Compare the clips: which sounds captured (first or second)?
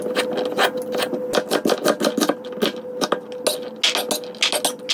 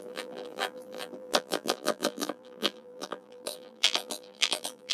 first